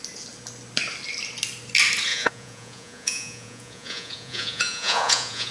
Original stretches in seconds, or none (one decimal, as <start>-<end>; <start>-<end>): 0.0-2.1